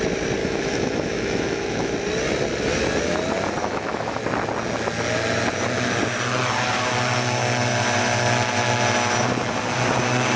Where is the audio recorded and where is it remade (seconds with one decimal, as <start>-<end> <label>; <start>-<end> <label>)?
0.0-0.4 recorded; 0.4-1.9 remade; 1.9-3.6 recorded; 3.6-4.2 remade; 4.2-10.4 recorded